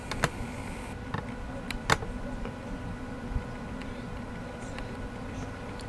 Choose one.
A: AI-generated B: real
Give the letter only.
B